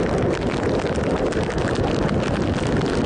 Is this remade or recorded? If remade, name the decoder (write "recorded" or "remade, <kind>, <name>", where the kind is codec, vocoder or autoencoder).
recorded